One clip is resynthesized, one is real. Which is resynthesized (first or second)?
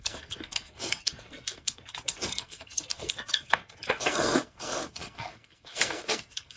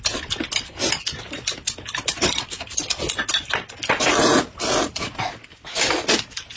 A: first